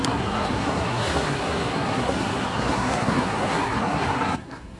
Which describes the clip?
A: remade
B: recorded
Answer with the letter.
A